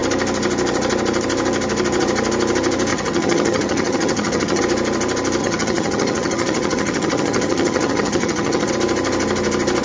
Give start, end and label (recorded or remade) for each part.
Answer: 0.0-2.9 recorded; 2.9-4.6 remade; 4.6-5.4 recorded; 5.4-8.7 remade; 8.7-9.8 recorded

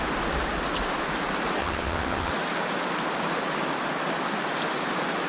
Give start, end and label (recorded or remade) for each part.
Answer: 0.0-1.6 recorded; 1.6-2.3 remade; 2.3-5.3 recorded